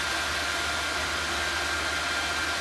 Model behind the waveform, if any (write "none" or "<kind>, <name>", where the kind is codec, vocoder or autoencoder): none